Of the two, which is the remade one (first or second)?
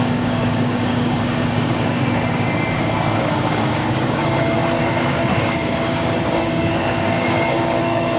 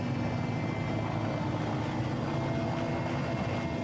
first